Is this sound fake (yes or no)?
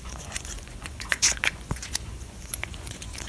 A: yes